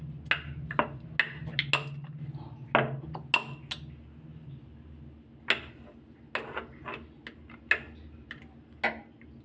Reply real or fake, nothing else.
real